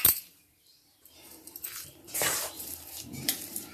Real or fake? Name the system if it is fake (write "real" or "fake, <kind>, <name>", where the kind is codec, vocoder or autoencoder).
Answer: fake, vocoder, BigVGAN v2